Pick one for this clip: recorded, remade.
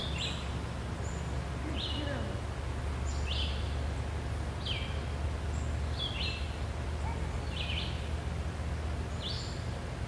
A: recorded